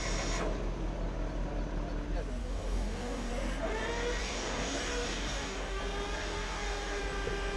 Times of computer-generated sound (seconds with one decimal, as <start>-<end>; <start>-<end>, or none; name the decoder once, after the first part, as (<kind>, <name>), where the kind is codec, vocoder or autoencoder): 2.4-3.3 (codec, DAC); 4.2-5.8; 6.2-7.0